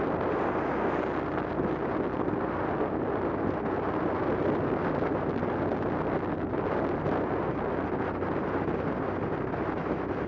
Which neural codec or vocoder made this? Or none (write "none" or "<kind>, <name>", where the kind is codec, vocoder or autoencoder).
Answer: none